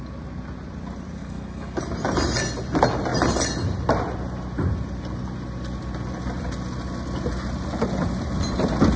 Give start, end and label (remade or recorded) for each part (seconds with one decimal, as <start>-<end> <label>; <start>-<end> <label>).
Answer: 0.0-1.2 recorded; 1.2-1.8 remade; 1.8-9.0 recorded